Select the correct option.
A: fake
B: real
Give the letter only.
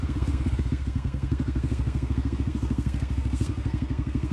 A